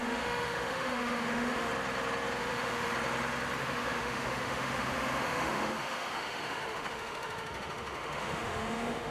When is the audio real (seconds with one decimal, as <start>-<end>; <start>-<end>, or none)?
1.7-2.4; 2.9-3.6